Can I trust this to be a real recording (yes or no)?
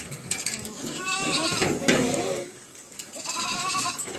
no